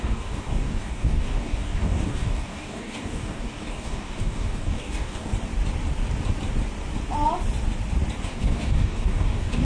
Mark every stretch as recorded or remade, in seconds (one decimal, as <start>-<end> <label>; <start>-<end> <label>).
0.0-5.3 remade; 5.3-8.2 recorded; 8.2-9.6 remade